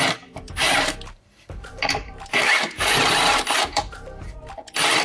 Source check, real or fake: fake